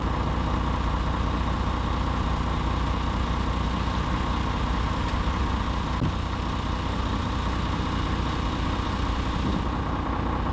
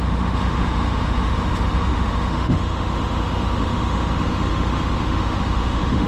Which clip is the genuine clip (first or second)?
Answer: first